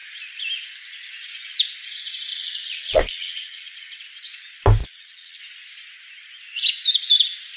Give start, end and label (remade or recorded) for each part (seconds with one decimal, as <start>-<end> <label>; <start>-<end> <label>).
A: 0.0-2.3 recorded; 2.3-4.0 remade; 4.0-4.8 recorded; 4.8-5.4 remade; 5.4-7.6 recorded